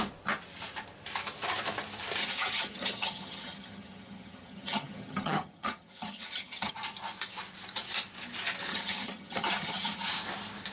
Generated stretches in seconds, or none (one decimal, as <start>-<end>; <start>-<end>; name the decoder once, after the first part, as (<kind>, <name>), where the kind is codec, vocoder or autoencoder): 2.2-6.7 (vocoder, HiFi-GAN); 8.7-10.1